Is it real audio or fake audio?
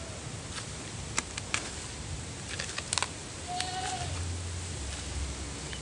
real